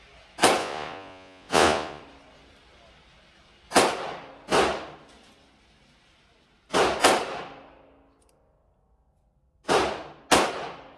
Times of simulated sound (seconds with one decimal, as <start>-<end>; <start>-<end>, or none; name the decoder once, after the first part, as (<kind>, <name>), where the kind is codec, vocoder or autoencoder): 0.6-2.0 (vocoder, Vocos)